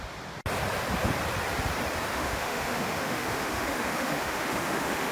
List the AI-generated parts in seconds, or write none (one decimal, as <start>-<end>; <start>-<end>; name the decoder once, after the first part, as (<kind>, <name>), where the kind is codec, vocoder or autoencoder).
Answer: 2.1-5.1 (autoencoder, DAC-VAE)

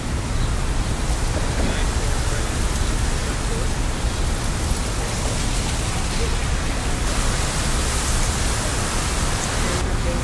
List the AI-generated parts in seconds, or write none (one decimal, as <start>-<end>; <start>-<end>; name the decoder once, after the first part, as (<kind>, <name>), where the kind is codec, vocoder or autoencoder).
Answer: none

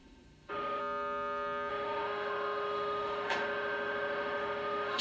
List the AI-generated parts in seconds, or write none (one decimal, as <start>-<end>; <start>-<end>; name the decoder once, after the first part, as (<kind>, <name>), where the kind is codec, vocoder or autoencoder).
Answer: 0.0-0.8 (autoencoder, DAC-VAE); 1.7-5.0

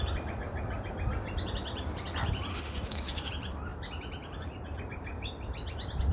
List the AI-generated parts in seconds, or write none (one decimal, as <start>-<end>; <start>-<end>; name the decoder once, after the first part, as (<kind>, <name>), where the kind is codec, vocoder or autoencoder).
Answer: 2.5-3.3 (autoencoder, DAC-VAE)

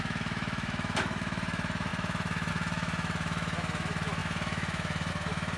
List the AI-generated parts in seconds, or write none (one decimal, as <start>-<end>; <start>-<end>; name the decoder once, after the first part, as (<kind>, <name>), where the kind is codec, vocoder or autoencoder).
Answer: 0.0-5.6 (autoencoder, DAC-VAE)

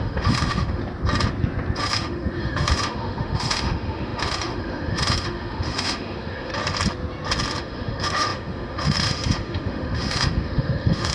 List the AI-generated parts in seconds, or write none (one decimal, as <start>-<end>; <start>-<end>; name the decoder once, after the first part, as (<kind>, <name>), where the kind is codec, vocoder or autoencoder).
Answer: 0.0-0.8 (autoencoder, DAC-VAE); 1.8-6.5; 7.6-11.1

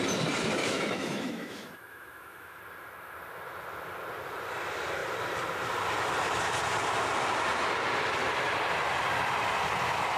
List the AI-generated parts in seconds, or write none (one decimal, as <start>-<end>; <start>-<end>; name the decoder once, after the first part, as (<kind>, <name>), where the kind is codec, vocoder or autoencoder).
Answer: 0.6-2.6 (autoencoder, DAC-VAE)

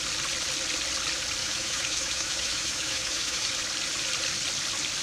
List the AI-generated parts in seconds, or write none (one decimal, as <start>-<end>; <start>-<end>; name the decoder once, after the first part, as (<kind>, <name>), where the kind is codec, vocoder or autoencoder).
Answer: 1.4-3.5 (autoencoder, DAC-VAE)